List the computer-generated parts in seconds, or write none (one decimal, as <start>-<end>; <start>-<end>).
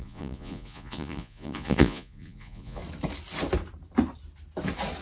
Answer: 0.0-2.8